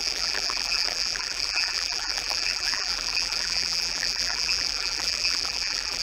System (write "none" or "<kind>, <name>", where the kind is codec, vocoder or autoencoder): vocoder, BigVGAN v2